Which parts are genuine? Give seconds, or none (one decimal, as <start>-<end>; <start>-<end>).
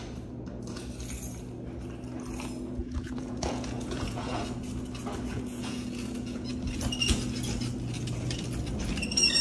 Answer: 0.0-2.8; 4.4-5.3; 6.5-9.4